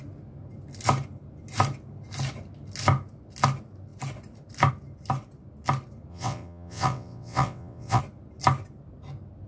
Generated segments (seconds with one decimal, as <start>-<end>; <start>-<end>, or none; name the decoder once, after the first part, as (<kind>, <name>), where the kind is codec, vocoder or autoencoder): 6.1-8.0 (vocoder, WaveNeXt)